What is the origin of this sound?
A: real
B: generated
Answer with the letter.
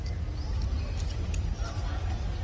A